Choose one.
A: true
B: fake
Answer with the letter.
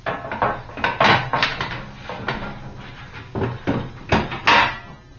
A